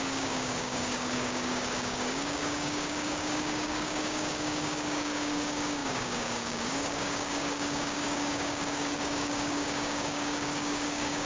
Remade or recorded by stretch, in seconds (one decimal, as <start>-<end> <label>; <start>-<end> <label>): 0.0-11.3 remade